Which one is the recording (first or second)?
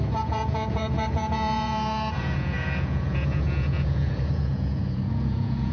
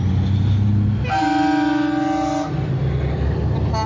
second